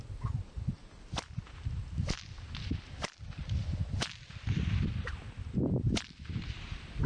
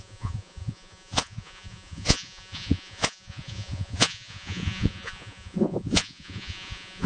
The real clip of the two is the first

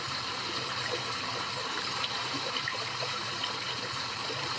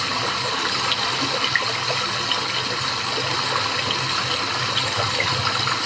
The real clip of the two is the second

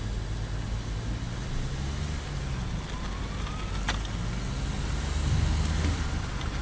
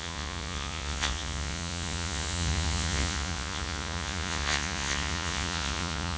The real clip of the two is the first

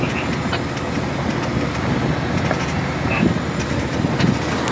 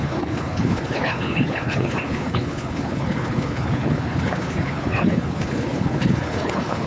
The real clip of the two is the first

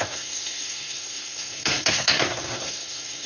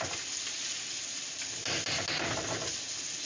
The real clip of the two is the second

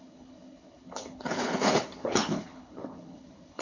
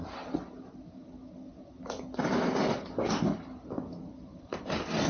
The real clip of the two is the second